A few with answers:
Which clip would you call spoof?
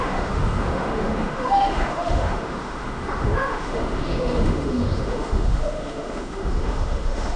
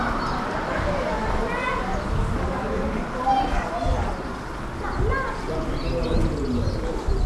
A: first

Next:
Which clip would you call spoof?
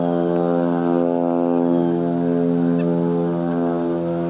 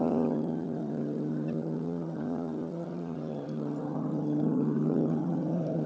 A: second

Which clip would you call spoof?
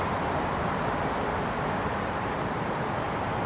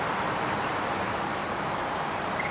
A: second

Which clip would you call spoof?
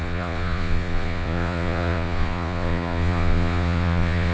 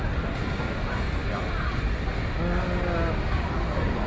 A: first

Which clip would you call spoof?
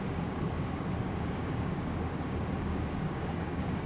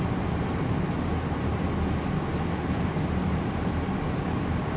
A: first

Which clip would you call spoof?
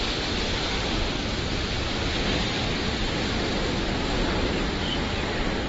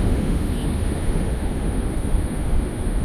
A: second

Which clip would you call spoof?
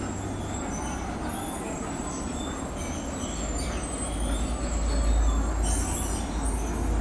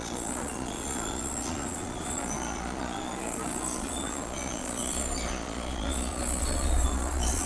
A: second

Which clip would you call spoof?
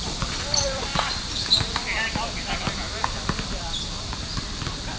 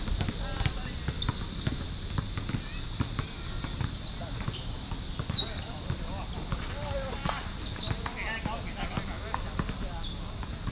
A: first